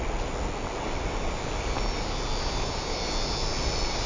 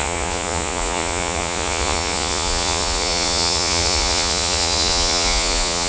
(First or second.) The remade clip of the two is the second